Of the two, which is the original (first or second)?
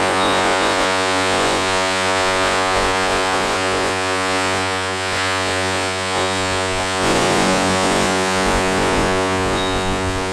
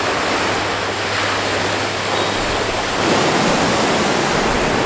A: second